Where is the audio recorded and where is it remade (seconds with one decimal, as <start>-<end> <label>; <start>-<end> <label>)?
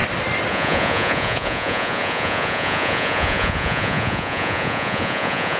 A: 0.0-0.5 recorded; 0.5-5.6 remade